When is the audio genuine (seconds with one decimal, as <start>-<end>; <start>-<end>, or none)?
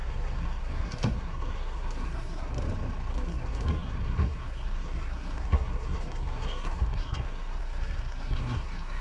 2.6-3.1